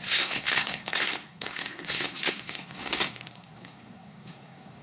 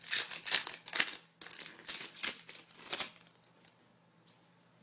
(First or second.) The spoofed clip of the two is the first